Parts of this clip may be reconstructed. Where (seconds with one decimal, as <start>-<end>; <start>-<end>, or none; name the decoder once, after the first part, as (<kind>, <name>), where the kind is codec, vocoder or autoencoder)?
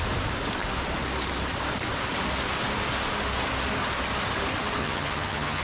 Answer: 4.8-5.6 (vocoder, HiFi-GAN)